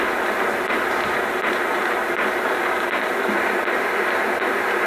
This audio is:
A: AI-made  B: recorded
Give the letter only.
A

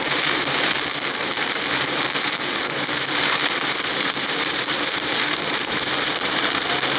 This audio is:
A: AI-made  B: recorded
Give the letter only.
A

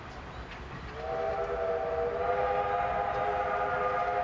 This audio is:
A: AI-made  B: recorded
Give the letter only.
B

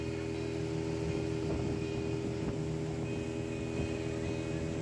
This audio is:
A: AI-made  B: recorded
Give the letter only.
B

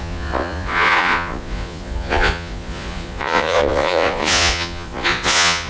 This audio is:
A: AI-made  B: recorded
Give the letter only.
A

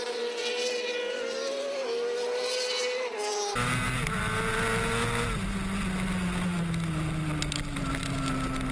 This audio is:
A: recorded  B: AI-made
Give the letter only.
A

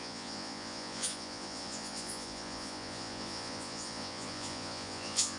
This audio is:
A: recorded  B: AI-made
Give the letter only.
B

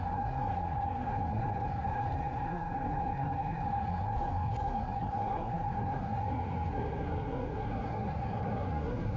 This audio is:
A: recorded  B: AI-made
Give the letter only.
B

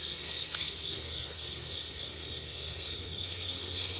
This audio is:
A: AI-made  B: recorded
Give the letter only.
A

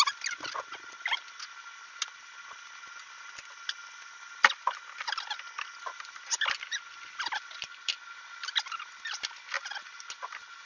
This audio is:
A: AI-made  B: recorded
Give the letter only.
B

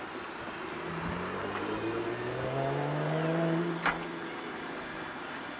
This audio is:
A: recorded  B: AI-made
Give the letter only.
A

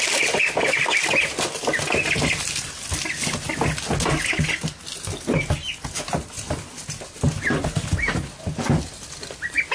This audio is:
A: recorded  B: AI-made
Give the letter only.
A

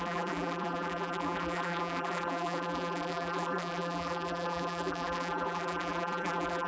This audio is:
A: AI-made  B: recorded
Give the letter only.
A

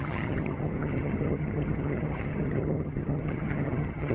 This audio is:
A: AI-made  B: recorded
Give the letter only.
A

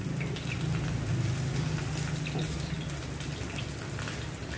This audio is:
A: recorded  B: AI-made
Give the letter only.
A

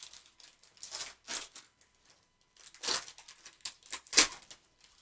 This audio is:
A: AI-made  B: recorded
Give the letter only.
B